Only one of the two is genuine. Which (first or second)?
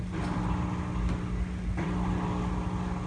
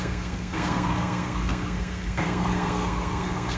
first